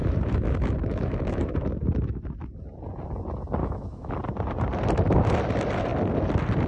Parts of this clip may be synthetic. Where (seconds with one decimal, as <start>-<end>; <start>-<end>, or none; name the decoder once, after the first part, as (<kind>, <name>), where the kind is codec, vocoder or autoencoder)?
0.0-1.6 (autoencoder, DAC-VAE); 3.6-4.1